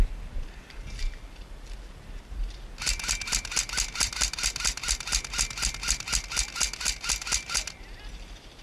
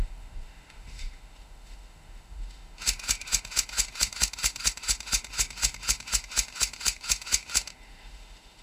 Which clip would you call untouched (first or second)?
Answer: first